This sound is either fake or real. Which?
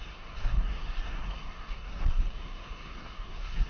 fake